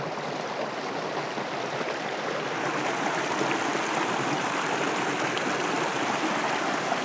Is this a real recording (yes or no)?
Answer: yes